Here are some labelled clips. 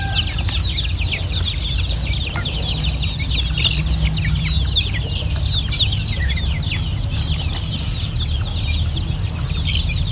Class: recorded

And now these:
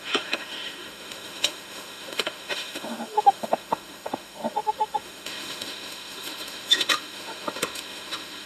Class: remade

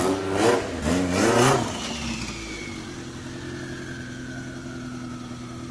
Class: recorded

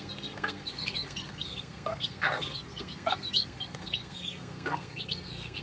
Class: remade